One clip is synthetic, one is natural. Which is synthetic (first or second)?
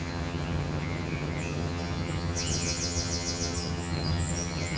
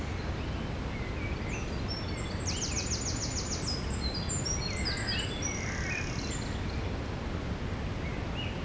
first